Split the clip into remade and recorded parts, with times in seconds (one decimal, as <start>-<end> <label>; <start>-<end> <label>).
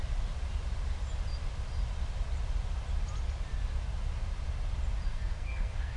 0.0-5.1 recorded; 5.1-6.0 remade